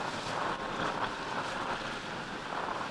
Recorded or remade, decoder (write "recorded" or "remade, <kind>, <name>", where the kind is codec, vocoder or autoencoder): recorded